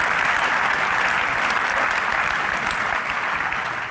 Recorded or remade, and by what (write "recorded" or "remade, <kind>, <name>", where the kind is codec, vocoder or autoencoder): recorded